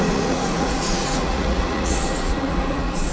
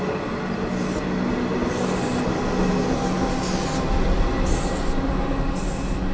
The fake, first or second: first